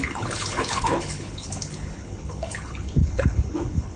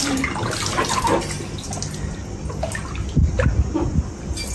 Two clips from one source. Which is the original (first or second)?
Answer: second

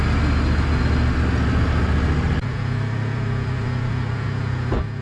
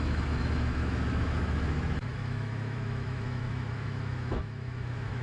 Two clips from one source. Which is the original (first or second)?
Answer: first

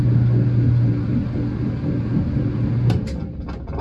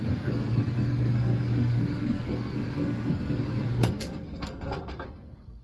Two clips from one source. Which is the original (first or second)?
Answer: first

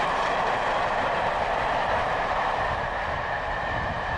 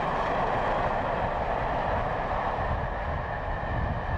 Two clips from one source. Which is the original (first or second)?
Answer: second